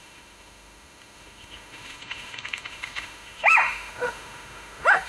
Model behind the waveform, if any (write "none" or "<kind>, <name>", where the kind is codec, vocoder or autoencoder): autoencoder, DAC-VAE